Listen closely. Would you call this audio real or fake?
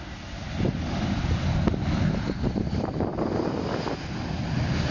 real